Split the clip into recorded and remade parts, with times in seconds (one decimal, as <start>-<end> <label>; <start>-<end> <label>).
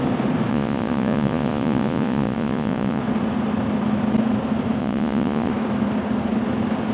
0.0-0.5 recorded; 0.5-3.0 remade; 3.0-4.8 recorded; 4.8-5.5 remade; 5.5-6.9 recorded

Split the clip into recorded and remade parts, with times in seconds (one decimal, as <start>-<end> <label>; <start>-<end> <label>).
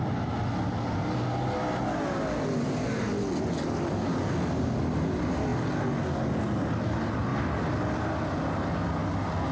0.0-9.5 recorded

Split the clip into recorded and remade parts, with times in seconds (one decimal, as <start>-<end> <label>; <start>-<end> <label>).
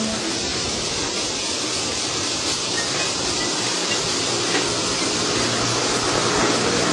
0.0-6.9 recorded